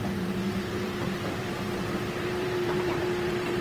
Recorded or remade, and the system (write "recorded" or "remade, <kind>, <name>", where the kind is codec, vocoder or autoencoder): remade, vocoder, BigVGAN v2